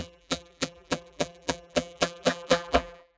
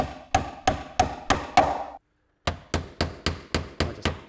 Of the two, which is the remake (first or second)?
first